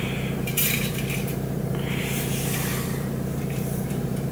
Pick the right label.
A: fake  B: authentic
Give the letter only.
A